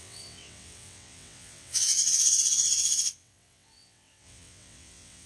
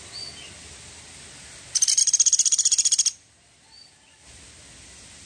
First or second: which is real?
second